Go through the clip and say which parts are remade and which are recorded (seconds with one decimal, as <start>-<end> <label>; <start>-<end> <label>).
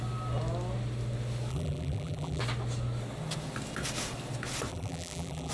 0.0-1.5 recorded; 1.5-2.4 remade; 2.4-4.7 recorded; 4.7-5.5 remade